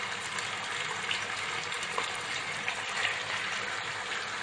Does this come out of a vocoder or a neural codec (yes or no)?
no